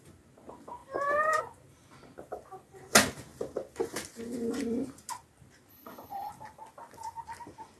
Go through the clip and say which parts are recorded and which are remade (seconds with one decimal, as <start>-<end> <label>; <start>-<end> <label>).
0.0-5.7 recorded; 5.7-6.3 remade; 6.3-7.8 recorded